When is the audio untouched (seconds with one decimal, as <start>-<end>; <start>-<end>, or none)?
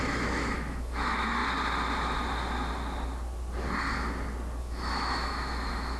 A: 1.4-4.6